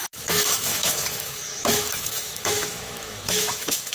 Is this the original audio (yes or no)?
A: no